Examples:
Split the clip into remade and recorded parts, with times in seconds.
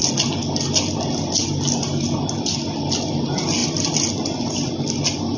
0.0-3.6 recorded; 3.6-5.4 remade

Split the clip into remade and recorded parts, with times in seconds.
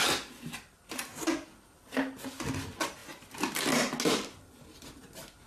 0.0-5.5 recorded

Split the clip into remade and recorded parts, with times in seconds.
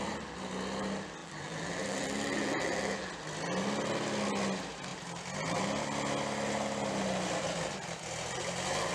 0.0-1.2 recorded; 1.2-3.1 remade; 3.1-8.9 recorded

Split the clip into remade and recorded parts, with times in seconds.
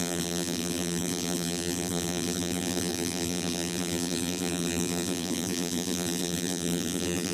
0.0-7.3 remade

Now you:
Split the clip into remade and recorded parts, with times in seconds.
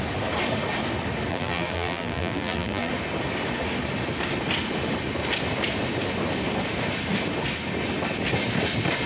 0.0-1.3 recorded; 1.3-2.9 remade; 2.9-9.1 recorded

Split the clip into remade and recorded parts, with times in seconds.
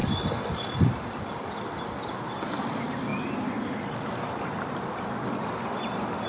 0.0-3.1 recorded; 3.1-5.6 remade; 5.6-6.3 recorded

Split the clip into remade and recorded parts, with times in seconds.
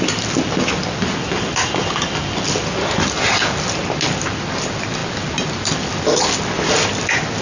0.0-7.4 recorded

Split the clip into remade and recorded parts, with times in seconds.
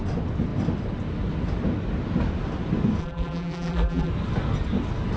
0.0-3.0 recorded; 3.0-4.1 remade; 4.1-5.2 recorded